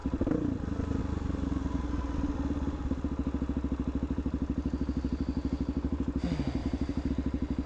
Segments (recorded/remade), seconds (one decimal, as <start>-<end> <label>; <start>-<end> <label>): 0.0-1.0 remade; 1.0-6.6 recorded; 6.6-7.1 remade; 7.1-7.7 recorded